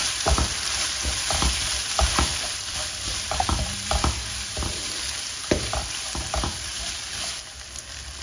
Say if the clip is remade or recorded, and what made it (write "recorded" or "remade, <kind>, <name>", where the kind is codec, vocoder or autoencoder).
remade, vocoder, BigVGAN v2